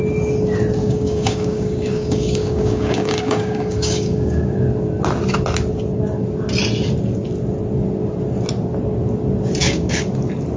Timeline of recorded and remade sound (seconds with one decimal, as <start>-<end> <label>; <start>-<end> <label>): 0.0-0.8 recorded; 0.8-4.6 remade; 4.6-9.6 recorded; 9.6-10.1 remade; 10.1-10.6 recorded